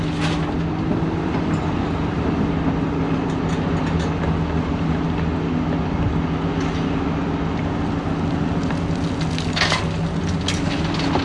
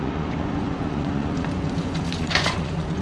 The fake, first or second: second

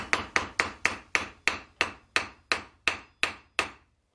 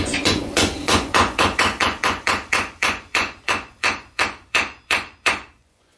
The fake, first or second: second